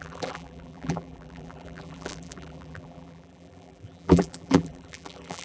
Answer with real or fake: fake